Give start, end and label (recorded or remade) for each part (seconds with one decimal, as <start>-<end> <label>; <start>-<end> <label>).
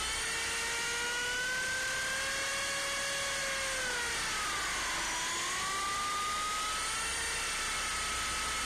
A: 0.0-8.6 recorded